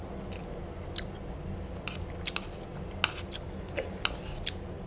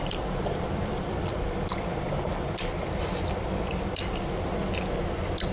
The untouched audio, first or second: first